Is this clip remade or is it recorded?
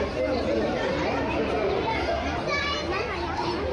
recorded